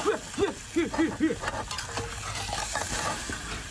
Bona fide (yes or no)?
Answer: yes